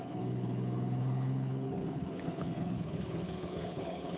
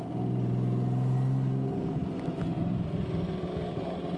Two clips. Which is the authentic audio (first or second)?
second